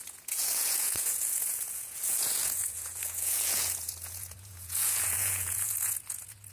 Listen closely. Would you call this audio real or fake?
fake